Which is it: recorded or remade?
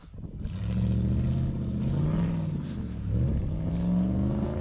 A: recorded